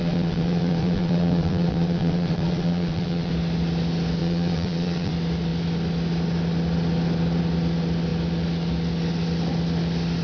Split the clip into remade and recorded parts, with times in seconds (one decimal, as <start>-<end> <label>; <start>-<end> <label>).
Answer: 0.0-3.3 remade; 3.3-4.2 recorded; 4.2-5.1 remade; 5.1-10.2 recorded